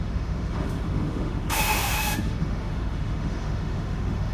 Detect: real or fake fake